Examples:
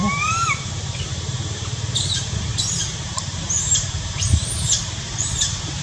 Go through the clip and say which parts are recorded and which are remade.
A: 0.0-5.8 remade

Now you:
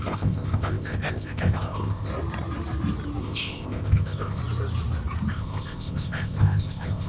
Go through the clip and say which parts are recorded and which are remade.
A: 0.0-2.1 remade; 2.1-3.2 recorded; 3.2-4.4 remade; 4.4-5.3 recorded; 5.3-7.1 remade

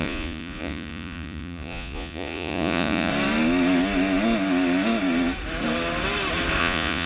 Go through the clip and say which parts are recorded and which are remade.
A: 0.0-3.1 remade; 3.1-6.6 recorded; 6.6-7.1 remade